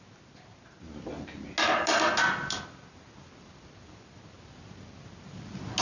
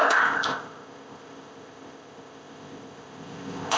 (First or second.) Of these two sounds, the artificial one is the second